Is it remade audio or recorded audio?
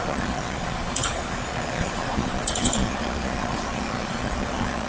remade